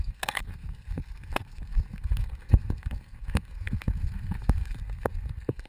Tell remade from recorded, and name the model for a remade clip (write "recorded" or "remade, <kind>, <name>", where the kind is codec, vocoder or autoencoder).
remade, codec, SNAC